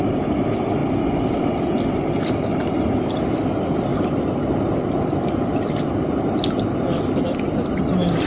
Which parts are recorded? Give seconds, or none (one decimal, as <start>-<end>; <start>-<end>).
0.0-3.9; 5.4-8.3